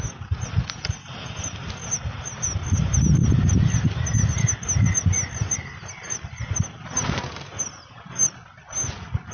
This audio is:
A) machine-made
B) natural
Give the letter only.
B